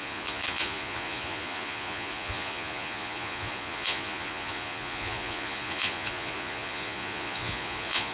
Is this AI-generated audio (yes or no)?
yes